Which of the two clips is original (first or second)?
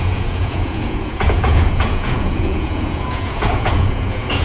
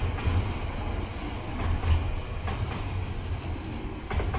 second